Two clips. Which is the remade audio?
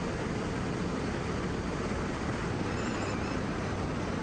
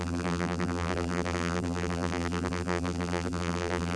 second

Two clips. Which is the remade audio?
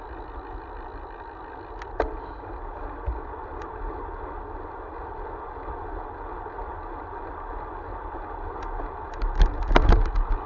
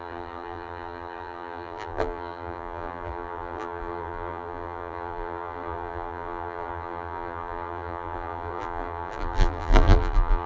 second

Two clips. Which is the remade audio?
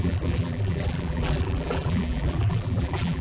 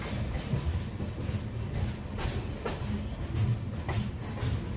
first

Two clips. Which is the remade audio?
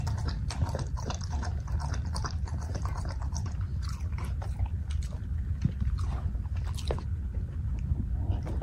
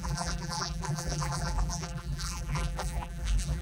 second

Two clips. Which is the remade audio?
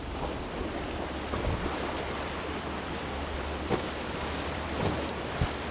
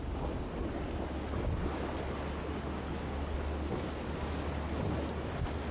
first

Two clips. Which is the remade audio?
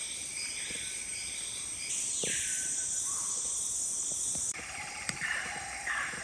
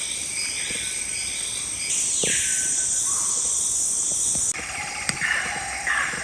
first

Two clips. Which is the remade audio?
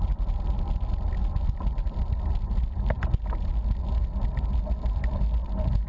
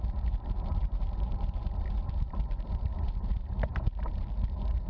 second